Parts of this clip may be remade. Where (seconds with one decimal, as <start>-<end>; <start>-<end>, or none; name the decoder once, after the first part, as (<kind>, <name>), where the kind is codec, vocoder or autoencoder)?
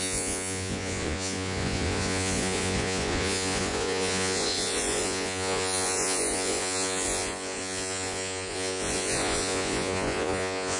0.0-10.8 (vocoder, Vocos)